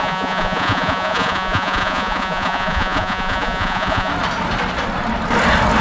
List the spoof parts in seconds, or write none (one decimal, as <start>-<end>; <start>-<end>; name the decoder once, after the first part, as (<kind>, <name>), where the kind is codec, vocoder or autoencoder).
0.0-4.1 (vocoder, Vocos)